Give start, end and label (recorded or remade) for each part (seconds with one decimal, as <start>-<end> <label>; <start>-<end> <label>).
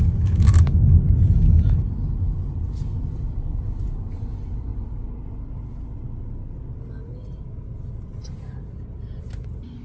0.0-9.8 recorded